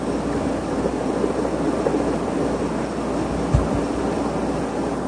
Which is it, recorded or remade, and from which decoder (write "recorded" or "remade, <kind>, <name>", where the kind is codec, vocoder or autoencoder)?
recorded